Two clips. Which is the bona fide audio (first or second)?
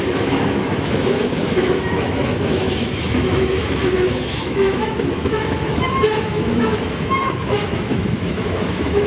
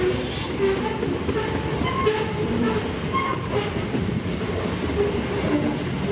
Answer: second